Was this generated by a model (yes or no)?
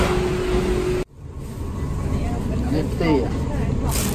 no